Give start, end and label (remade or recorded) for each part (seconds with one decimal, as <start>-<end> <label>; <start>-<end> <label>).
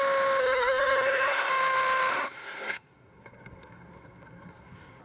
0.0-0.4 recorded; 0.4-1.5 remade; 1.5-2.1 recorded; 2.1-5.0 remade